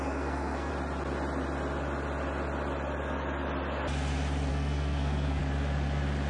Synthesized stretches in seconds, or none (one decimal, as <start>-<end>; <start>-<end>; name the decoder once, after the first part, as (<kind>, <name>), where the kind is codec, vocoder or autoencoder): 0.0-0.7 (codec, SNAC); 4.5-5.4